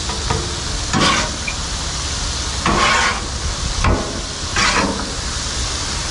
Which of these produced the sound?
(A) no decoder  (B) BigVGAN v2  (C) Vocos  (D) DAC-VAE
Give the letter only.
A